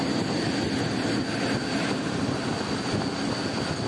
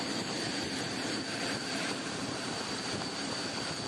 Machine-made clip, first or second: second